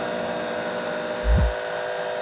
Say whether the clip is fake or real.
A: real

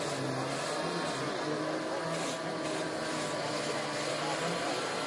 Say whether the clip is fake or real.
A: real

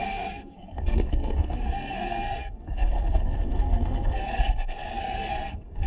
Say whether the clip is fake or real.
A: fake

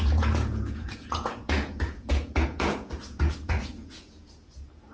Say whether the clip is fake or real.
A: fake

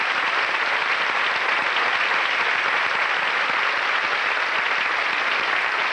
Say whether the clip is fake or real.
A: real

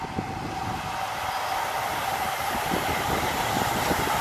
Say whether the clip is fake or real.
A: real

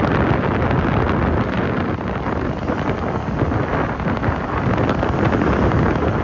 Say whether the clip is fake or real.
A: real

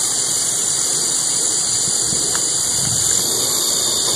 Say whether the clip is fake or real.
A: real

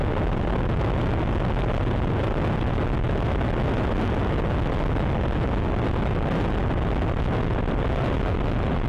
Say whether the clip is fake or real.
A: real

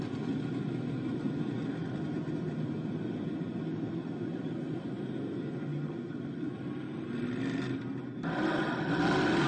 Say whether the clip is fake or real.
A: real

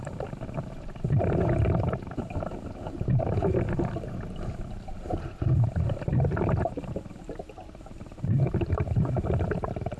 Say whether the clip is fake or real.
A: real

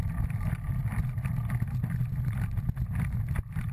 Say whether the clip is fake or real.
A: real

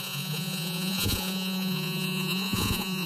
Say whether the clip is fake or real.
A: fake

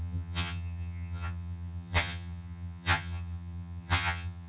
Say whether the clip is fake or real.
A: fake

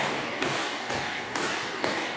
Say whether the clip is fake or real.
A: fake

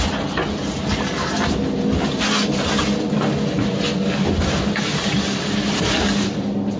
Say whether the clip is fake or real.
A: real